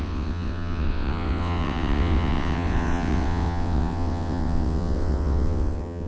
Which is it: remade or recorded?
remade